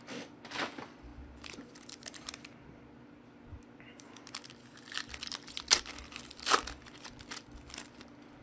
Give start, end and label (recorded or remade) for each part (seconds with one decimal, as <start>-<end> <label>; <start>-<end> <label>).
0.0-8.4 recorded

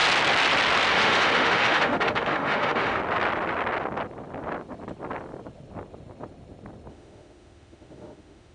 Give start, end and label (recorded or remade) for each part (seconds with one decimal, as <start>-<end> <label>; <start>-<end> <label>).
0.0-0.9 recorded; 0.9-3.0 remade; 3.0-6.9 recorded; 6.9-8.5 remade

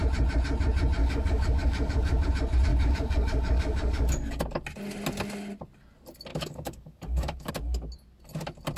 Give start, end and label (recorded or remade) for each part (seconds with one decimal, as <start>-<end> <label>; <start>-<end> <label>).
0.0-1.0 recorded; 1.0-2.3 remade; 2.3-2.7 recorded; 2.7-4.4 remade; 4.4-6.3 recorded; 6.3-7.5 remade; 7.5-8.8 recorded

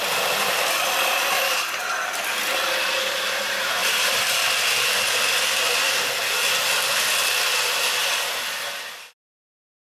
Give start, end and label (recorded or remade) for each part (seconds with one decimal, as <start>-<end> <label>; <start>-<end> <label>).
0.0-3.8 recorded; 3.8-5.0 remade; 5.0-9.8 recorded

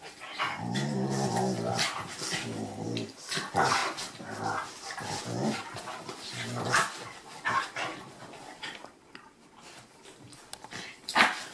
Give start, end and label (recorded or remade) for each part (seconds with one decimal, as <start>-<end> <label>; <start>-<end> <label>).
0.0-11.5 recorded

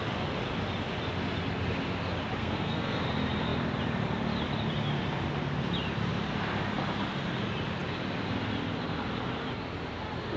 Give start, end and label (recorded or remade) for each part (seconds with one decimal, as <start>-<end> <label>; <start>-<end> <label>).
0.0-2.4 recorded; 2.4-3.0 remade; 3.0-10.4 recorded

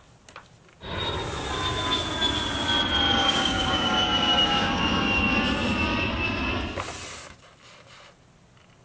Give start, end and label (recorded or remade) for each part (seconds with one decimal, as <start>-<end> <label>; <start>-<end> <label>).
0.0-3.2 recorded; 3.2-5.2 remade; 5.2-8.8 recorded